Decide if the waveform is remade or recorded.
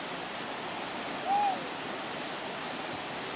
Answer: recorded